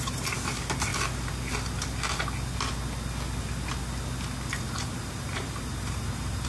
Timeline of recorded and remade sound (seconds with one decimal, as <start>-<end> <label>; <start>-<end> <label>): 0.0-0.9 remade; 0.9-4.8 recorded; 4.8-6.5 remade